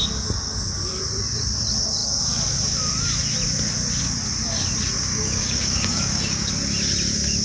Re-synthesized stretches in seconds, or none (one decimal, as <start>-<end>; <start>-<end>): 5.1-6.5